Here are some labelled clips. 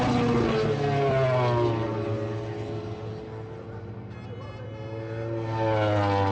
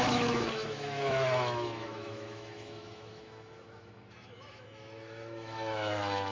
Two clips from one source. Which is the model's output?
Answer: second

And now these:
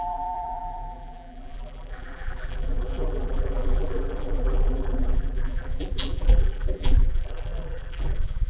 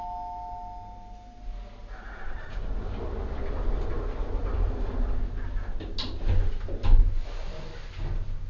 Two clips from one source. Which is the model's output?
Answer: first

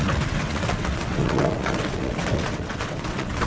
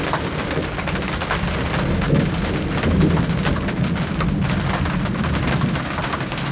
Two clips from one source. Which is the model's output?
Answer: first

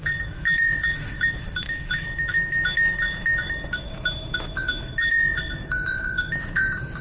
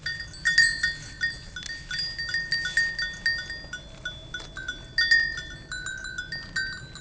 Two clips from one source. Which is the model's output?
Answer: first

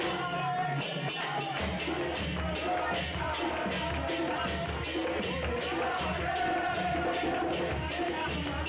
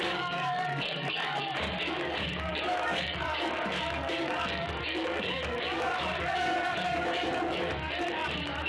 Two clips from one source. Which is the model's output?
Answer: second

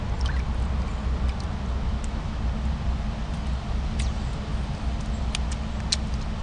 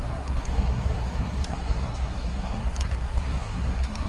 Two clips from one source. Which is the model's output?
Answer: second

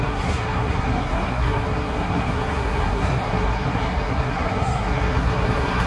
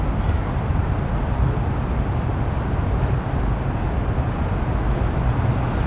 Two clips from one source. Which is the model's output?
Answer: first